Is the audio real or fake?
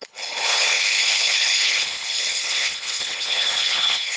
fake